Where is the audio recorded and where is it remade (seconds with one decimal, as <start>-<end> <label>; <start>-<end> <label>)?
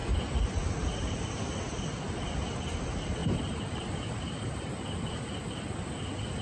0.0-3.2 recorded; 3.2-5.6 remade; 5.6-6.4 recorded